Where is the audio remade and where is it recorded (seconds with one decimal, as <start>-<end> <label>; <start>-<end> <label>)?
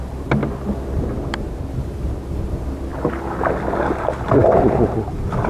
0.0-5.5 recorded